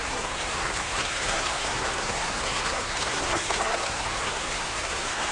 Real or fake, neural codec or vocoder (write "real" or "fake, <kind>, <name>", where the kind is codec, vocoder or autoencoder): fake, codec, SNAC